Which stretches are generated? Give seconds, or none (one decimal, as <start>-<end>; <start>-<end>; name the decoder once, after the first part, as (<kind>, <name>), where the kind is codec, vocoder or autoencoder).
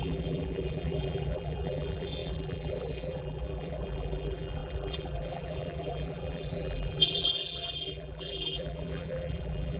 0.0-9.8 (vocoder, BigVGAN v2)